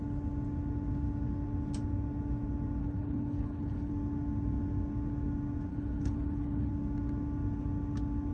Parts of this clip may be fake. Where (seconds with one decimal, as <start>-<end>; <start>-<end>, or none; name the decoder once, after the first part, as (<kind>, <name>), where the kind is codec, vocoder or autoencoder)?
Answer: 2.8-3.9 (codec, HILCodec); 5.7-6.7